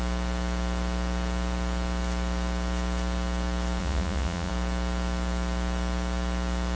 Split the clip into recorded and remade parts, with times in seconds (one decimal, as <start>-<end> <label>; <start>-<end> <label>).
0.0-3.8 recorded; 3.8-4.5 remade; 4.5-6.8 recorded